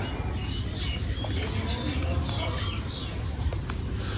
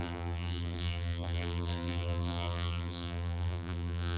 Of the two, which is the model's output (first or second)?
second